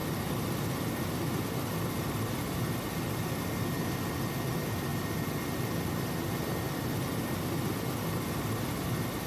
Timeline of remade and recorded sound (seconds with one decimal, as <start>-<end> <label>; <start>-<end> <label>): 0.0-9.3 recorded